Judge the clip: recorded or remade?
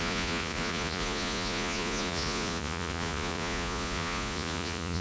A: remade